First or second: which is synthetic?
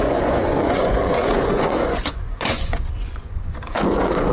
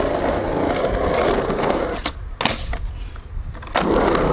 first